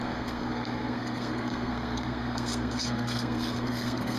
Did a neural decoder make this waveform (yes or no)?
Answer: yes